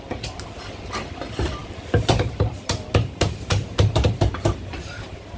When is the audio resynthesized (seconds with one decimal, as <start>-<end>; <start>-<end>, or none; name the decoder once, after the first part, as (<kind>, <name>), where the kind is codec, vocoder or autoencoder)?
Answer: 1.6-4.8 (vocoder, BigVGAN v2)